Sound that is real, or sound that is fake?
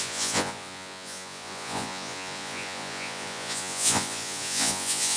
fake